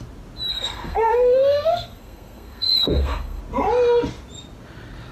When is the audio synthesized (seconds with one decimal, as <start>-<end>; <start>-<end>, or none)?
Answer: 0.5-3.4